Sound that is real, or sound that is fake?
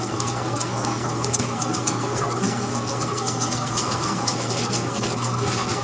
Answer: fake